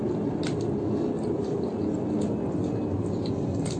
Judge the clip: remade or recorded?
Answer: recorded